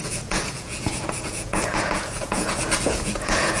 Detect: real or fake fake